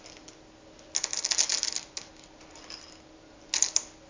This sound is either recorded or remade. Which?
recorded